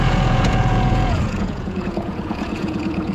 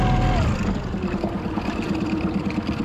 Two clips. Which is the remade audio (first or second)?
first